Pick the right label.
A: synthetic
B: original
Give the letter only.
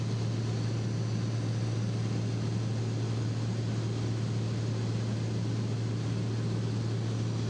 B